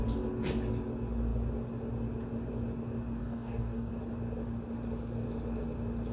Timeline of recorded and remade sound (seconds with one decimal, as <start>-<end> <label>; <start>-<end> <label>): 0.0-3.2 recorded; 3.2-3.9 remade; 3.9-6.1 recorded